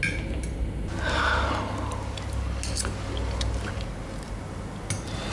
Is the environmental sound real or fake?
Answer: real